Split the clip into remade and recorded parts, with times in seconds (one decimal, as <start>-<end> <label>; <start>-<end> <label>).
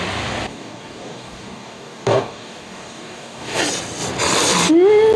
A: 0.0-0.5 recorded; 0.5-3.6 remade; 3.6-5.2 recorded